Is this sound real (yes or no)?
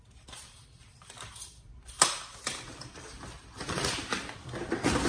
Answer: yes